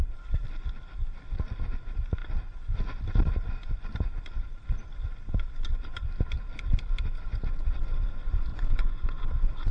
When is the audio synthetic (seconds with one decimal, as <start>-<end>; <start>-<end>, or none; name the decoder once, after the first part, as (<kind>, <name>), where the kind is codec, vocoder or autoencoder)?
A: 8.5-9.2 (vocoder, Vocos)